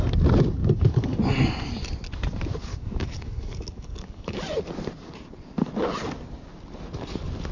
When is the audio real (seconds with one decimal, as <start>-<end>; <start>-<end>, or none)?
0.0-0.6; 1.2-2.7; 4.4-7.5